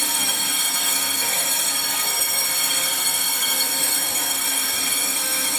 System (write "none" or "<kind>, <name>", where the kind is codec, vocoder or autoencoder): codec, SNAC